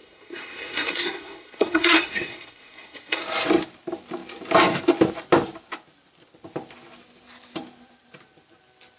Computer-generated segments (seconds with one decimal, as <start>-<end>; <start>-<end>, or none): 0.0-3.2